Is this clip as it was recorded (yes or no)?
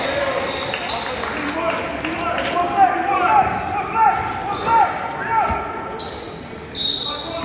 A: yes